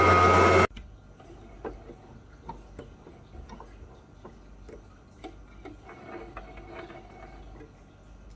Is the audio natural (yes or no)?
yes